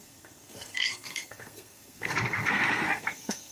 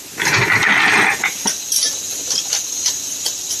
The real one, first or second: second